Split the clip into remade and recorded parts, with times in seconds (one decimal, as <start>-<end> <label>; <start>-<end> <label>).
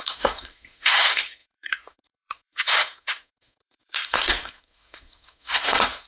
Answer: 0.0-6.1 remade